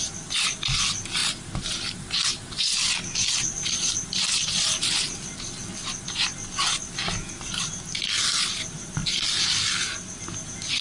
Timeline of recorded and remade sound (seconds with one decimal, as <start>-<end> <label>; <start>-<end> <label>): 0.0-10.8 recorded